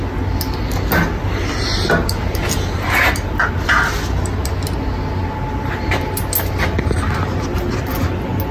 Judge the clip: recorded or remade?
recorded